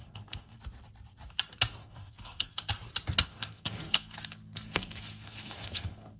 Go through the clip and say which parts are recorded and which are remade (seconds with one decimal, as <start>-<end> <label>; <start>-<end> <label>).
0.0-0.6 remade; 0.6-1.8 recorded; 1.8-2.7 remade; 2.7-3.2 recorded; 3.2-6.2 remade